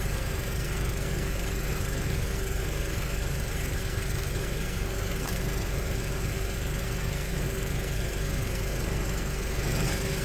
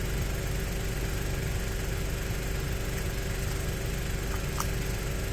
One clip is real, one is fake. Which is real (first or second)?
second